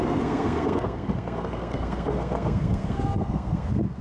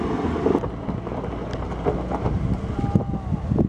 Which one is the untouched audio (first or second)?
second